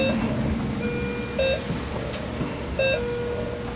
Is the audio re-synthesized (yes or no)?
no